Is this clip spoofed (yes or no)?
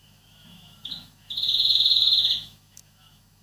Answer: yes